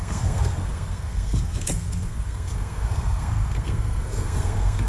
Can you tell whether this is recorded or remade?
remade